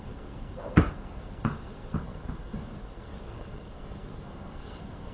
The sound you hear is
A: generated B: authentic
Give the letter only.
A